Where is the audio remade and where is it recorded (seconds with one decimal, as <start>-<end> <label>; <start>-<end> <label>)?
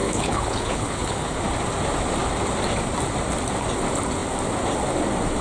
0.0-1.4 remade; 1.4-5.4 recorded